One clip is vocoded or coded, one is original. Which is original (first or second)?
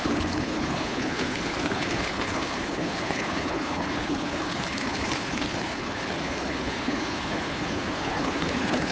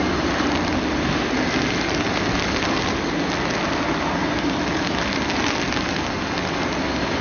second